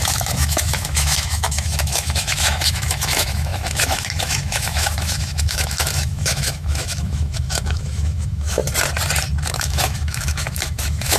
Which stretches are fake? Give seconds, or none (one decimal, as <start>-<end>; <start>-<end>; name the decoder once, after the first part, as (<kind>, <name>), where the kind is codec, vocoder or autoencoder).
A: 0.0-8.6 (autoencoder, DAC-VAE); 9.4-11.2